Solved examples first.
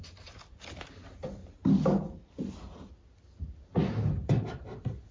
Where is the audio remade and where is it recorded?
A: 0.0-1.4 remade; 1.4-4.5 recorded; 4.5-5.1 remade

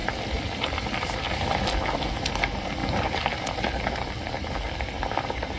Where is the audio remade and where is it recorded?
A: 0.0-2.3 remade; 2.3-2.8 recorded; 2.8-4.7 remade; 4.7-5.6 recorded

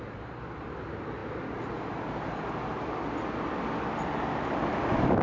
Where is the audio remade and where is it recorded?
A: 0.0-5.2 recorded

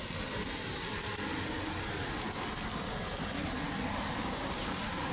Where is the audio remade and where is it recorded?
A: 0.0-4.2 recorded; 4.2-5.1 remade

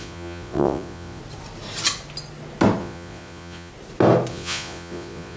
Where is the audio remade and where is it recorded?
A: 0.0-1.2 remade; 1.2-2.8 recorded; 2.8-3.7 remade; 3.7-4.3 recorded; 4.3-5.4 remade

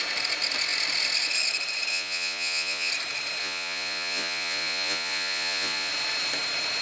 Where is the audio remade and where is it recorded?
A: 0.0-1.9 recorded; 1.9-2.9 remade; 2.9-3.4 recorded; 3.4-5.9 remade; 5.9-6.8 recorded

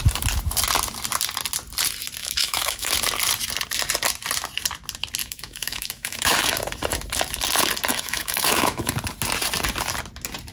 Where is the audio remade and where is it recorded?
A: 0.0-2.2 recorded; 2.2-2.9 remade; 2.9-5.2 recorded; 5.2-6.6 remade; 6.6-7.9 recorded; 7.9-8.9 remade; 8.9-10.5 recorded